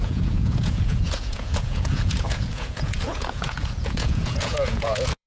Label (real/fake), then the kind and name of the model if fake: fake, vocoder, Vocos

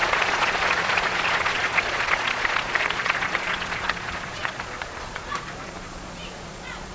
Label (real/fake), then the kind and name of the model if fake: fake, vocoder, Vocos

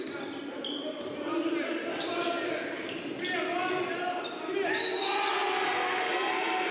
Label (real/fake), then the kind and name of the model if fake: real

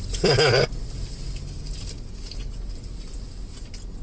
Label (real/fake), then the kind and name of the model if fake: real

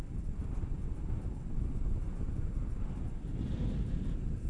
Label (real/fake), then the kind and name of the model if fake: real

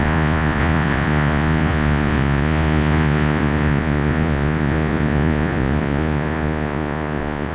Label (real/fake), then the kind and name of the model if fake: fake, vocoder, Vocos